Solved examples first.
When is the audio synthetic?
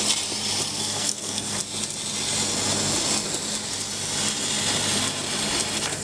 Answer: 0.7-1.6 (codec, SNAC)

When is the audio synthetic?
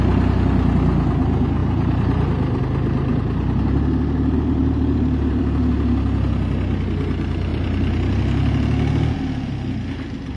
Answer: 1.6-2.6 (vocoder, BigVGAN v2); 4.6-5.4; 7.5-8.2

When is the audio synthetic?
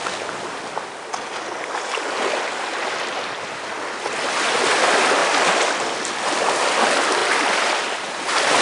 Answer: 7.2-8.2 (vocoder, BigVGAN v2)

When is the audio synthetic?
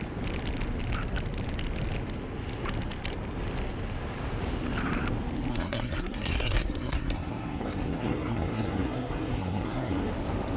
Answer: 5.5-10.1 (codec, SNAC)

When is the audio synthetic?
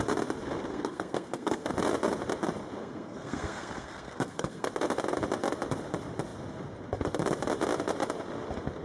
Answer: 0.7-1.7 (codec, SNAC); 2.8-4.7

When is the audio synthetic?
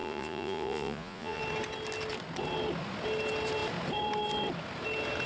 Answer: 0.0-1.4 (vocoder, Vocos)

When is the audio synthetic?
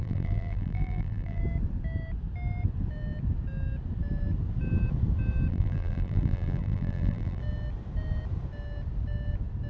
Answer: 0.0-1.4 (vocoder, BigVGAN v2); 5.5-7.4